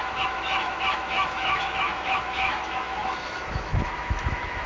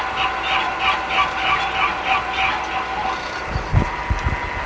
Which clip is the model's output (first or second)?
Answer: first